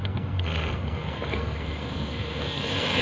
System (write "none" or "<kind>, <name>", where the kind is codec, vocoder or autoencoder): codec, SNAC